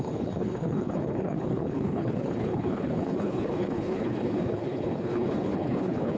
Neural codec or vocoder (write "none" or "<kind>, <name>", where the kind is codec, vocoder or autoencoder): codec, HILCodec